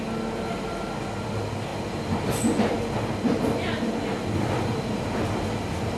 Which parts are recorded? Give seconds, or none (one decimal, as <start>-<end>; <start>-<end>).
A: 0.0-6.0